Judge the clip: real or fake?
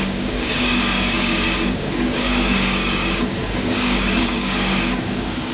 fake